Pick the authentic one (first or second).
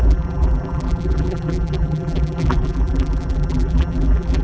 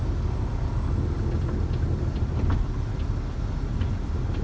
second